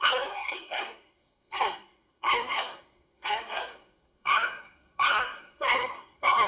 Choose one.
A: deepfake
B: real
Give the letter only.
A